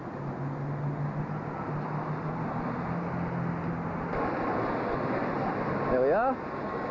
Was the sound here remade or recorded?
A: recorded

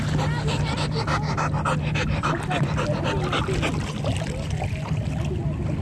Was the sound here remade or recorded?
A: recorded